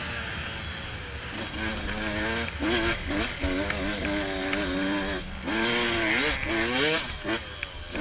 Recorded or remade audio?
recorded